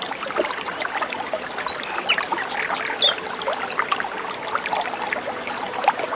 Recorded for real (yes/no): yes